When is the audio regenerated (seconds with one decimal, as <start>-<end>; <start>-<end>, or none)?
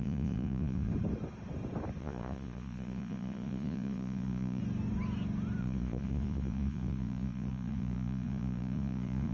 0.0-0.9; 2.0-4.6; 5.6-9.3